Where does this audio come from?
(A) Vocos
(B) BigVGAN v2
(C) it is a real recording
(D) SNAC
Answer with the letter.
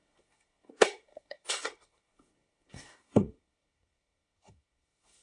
D